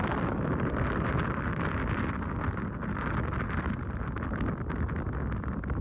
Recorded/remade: recorded